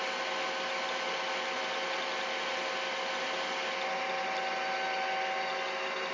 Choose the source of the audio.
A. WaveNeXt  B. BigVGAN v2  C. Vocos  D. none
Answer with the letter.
D